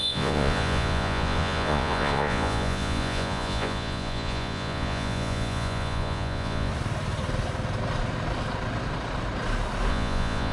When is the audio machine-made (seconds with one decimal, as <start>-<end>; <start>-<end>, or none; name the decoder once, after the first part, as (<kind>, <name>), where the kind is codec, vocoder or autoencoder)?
0.0-6.7 (vocoder, Vocos); 9.9-10.5